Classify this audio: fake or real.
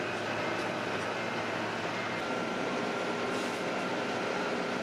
fake